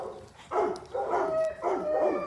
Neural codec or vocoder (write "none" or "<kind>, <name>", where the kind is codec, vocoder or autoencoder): none